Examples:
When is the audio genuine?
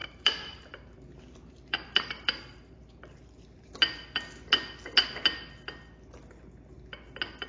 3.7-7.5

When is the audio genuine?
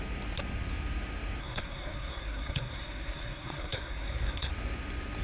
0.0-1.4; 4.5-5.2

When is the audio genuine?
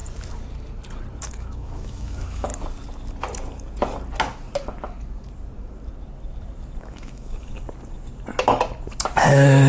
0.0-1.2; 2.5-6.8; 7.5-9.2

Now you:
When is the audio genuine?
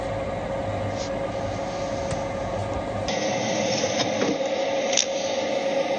0.0-6.0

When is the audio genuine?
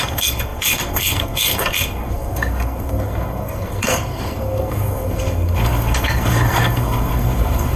none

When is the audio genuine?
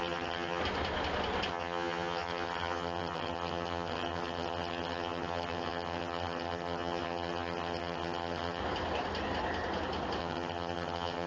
0.6-1.5; 8.6-10.2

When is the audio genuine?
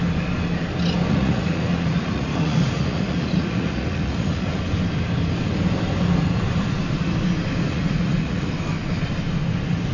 0.0-1.1; 4.5-7.7; 8.5-9.9